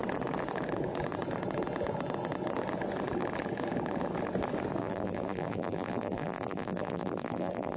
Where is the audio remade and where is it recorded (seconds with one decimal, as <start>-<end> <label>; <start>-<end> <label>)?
0.0-4.8 recorded; 4.8-7.8 remade